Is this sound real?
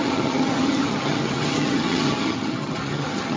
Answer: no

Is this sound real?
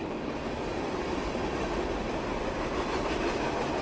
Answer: yes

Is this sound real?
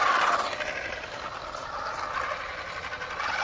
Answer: yes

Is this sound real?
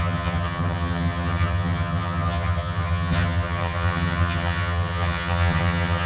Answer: no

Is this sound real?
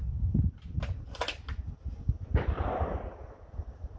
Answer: yes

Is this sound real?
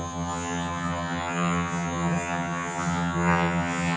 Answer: no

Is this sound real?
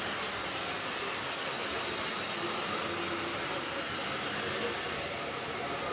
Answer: yes